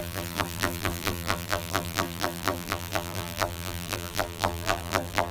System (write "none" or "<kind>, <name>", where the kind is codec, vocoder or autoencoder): vocoder, BigVGAN v2